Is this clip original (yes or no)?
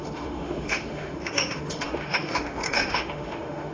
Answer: no